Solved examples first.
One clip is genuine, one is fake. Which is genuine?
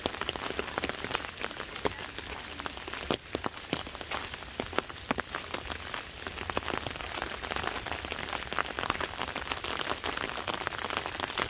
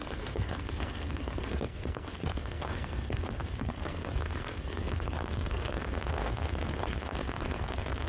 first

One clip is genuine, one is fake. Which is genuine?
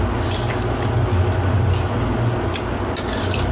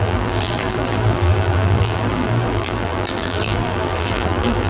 first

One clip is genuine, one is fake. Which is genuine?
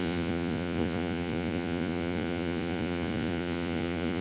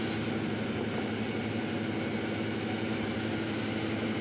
second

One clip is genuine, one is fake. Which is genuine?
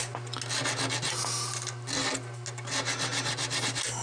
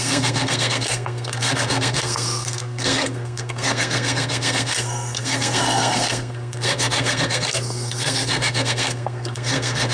first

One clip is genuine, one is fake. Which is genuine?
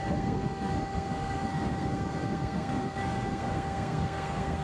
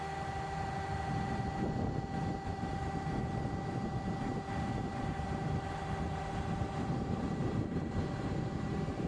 second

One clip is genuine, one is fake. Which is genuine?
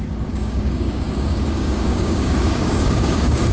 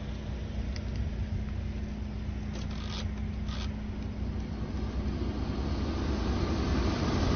second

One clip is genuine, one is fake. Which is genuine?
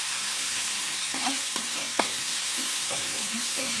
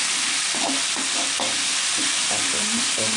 second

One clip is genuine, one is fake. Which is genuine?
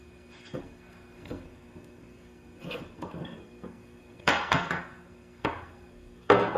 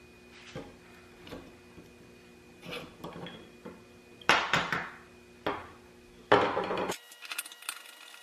second